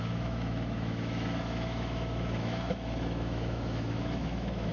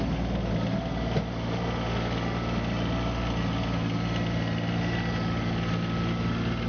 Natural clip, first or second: second